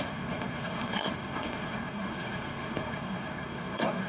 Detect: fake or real fake